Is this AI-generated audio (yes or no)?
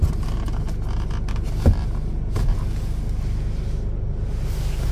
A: no